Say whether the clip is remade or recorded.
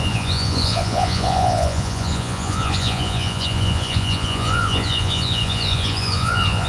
remade